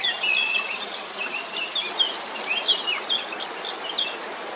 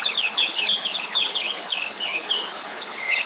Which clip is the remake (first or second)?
second